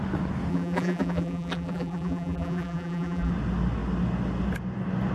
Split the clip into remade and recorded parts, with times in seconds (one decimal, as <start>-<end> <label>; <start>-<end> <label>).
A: 0.0-0.5 recorded; 0.5-3.3 remade; 3.3-5.1 recorded